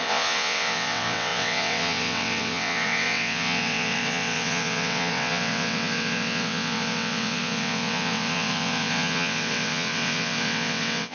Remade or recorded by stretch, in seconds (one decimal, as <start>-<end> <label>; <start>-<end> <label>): 0.0-11.1 remade